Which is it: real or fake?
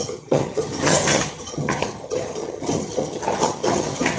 fake